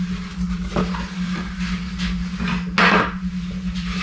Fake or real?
real